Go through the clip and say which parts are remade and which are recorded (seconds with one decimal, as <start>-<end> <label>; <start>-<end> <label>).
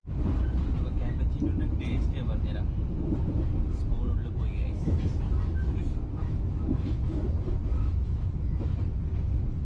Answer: 0.0-4.6 recorded; 4.6-5.1 remade; 5.1-6.2 recorded; 6.2-7.2 remade; 7.2-7.7 recorded; 7.7-8.8 remade; 8.8-9.6 recorded